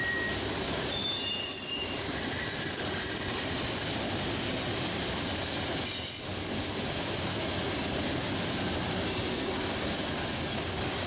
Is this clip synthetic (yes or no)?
no